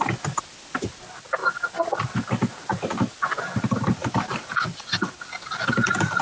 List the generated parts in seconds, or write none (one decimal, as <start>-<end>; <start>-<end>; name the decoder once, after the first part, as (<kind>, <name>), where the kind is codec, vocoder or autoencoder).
4.0-5.1 (vocoder, BigVGAN v2)